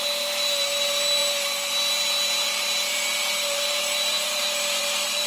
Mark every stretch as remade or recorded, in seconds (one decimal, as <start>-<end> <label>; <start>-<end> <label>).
0.0-5.3 recorded